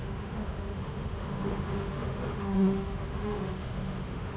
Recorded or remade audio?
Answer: remade